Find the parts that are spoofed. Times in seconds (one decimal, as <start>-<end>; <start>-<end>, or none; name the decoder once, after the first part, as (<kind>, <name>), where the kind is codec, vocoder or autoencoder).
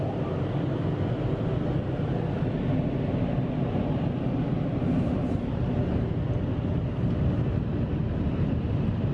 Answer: 8.0-9.1 (vocoder, BigVGAN v2)